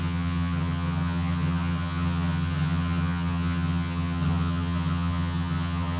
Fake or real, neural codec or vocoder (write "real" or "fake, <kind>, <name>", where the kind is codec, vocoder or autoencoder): fake, vocoder, HiFi-GAN